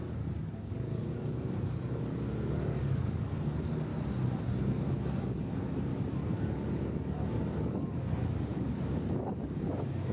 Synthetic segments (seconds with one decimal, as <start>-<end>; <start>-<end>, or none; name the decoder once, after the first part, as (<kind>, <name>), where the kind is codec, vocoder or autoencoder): 0.0-3.9 (codec, DAC); 4.7-5.9; 6.4-10.1